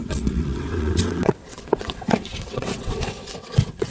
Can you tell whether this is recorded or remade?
remade